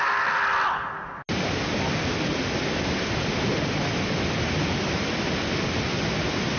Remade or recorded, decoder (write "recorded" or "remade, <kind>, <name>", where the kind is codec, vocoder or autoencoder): recorded